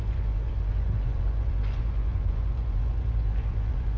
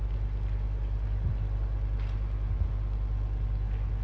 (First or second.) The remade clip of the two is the first